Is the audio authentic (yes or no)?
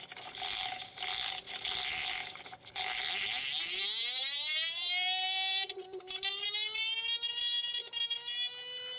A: yes